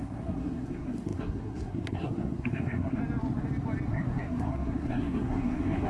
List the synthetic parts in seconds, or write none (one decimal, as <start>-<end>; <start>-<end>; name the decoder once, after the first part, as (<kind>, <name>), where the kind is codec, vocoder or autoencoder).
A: 0.0-3.0 (codec, SNAC); 3.9-5.9